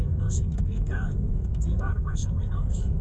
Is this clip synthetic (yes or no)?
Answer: yes